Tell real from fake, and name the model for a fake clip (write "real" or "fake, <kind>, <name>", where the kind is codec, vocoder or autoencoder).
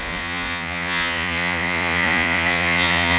fake, vocoder, Vocos